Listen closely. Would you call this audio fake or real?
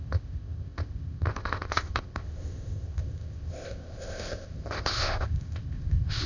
fake